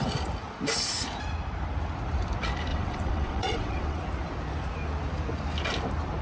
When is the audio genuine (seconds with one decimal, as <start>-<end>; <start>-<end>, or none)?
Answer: 0.0-2.7; 4.0-6.2